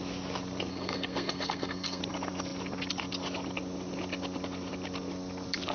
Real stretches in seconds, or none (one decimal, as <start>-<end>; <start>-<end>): 0.0-0.7; 2.0-5.7